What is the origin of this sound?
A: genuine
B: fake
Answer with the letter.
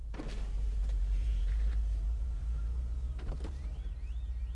B